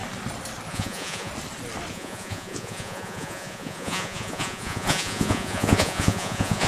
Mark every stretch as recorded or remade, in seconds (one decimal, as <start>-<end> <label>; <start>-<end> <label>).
0.0-0.7 recorded; 0.7-1.3 remade; 1.3-1.9 recorded; 1.9-6.7 remade